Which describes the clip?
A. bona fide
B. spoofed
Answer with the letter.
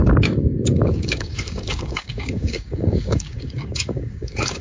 B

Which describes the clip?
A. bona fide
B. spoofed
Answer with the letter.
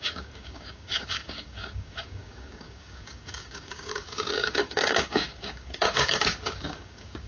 B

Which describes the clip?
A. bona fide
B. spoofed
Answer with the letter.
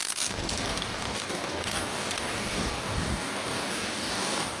B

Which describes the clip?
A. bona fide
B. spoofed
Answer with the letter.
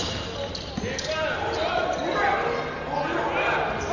A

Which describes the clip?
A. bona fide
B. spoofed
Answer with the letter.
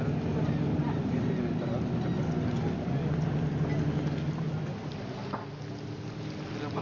A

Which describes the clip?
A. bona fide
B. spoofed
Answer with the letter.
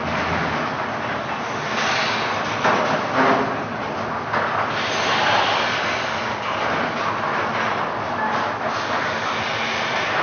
A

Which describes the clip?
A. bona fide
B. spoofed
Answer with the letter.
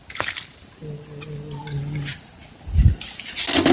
A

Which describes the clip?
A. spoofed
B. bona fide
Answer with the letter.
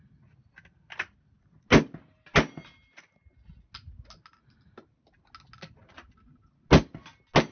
B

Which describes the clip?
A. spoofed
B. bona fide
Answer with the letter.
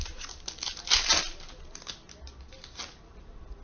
B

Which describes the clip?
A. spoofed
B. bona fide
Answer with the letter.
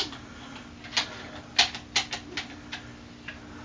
B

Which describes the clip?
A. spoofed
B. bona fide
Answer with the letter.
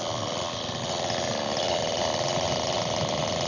B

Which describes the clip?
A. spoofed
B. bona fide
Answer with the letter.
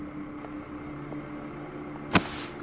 B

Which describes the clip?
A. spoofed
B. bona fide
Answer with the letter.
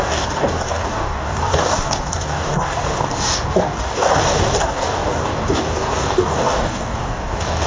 A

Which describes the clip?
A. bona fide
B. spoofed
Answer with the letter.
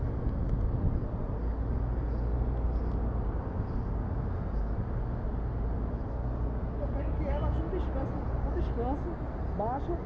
A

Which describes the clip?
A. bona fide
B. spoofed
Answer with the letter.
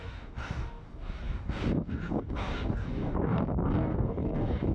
B